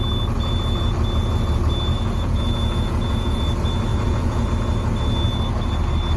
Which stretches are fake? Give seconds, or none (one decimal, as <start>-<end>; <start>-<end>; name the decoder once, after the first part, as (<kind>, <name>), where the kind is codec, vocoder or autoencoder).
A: 1.9-3.4 (vocoder, Vocos); 3.9-4.5